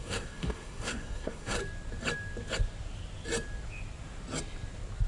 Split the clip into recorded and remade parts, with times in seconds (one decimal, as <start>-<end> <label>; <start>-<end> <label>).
0.0-1.6 remade; 1.6-5.1 recorded